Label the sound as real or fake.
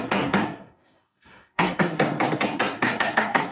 fake